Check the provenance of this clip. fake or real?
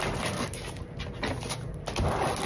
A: real